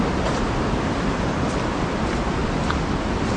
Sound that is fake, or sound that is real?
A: real